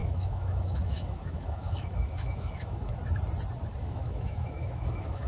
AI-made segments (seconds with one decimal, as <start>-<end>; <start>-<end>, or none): 0.0-3.0; 3.8-5.3